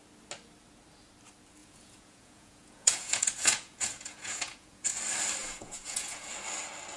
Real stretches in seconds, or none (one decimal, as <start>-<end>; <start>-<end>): 0.0-1.6; 5.0-5.4; 6.3-7.0